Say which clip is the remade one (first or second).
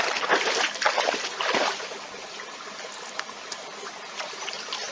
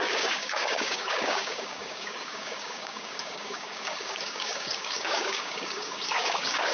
second